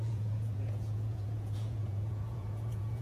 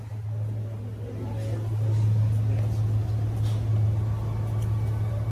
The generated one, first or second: first